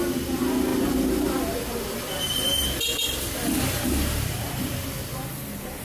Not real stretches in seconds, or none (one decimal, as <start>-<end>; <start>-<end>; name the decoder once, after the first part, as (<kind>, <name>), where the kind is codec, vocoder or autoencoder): none